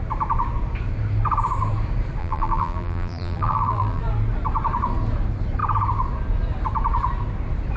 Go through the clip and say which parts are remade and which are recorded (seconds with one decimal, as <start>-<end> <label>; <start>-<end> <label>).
0.0-2.2 recorded; 2.2-4.0 remade; 4.0-7.8 recorded